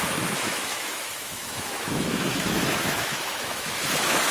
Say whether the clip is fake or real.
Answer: fake